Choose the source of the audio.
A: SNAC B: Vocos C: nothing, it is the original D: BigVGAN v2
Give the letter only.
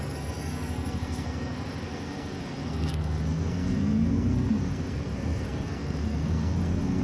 A